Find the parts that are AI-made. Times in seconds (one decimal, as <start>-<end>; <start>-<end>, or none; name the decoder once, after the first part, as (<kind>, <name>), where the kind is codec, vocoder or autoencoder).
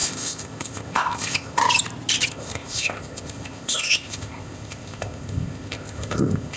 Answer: 0.0-1.6 (codec, ZipCodec); 2.3-6.6